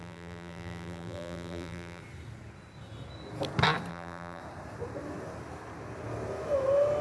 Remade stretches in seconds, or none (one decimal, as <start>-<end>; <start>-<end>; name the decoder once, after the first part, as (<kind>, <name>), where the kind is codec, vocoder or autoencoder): 0.0-2.0 (vocoder, BigVGAN v2); 3.9-4.4